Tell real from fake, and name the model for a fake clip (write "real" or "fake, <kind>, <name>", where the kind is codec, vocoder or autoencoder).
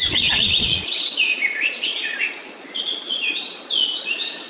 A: fake, vocoder, Vocos